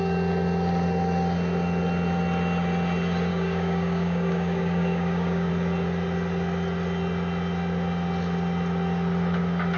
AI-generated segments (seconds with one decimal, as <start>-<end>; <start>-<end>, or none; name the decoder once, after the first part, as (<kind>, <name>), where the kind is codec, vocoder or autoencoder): 3.3-5.5 (codec, DAC)